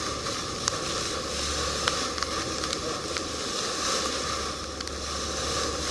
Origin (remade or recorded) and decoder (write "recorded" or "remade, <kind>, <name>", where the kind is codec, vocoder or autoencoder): recorded